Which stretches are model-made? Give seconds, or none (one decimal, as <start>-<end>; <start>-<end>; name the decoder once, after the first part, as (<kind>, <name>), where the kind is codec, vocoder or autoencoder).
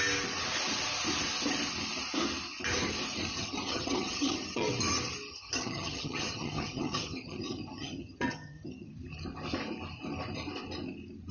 3.3-4.7 (vocoder, HiFi-GAN); 5.3-8.9